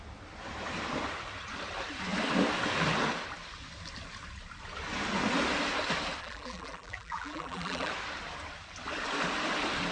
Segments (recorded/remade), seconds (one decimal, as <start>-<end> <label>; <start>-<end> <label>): 0.0-6.2 recorded; 6.2-7.9 remade; 7.9-9.9 recorded